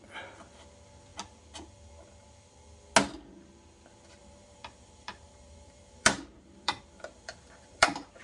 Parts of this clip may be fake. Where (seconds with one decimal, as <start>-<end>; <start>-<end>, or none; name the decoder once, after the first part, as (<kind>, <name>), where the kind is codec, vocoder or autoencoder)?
4.2-8.2 (vocoder, BigVGAN v2)